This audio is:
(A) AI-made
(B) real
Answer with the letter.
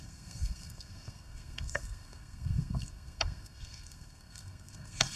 A